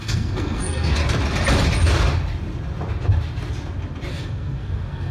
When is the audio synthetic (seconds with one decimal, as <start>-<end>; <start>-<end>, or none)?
0.0-1.0; 4.1-5.1